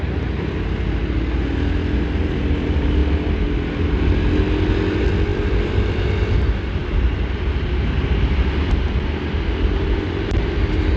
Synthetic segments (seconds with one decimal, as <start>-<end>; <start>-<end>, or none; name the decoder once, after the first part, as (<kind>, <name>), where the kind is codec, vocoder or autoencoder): 5.3-6.0 (vocoder, BigVGAN v2)